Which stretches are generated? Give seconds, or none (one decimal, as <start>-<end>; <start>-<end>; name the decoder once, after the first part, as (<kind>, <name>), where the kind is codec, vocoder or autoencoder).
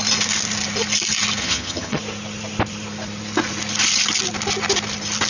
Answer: 1.4-2.0 (vocoder, HiFi-GAN)